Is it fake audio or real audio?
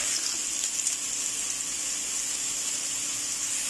real